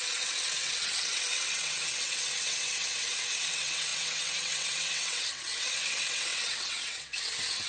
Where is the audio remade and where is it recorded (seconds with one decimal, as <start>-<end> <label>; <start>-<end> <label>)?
0.0-7.7 remade